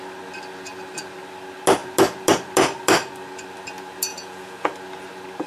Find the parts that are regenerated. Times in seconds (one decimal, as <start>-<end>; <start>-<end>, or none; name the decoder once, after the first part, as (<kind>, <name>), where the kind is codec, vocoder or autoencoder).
4.1-4.7 (vocoder, Vocos)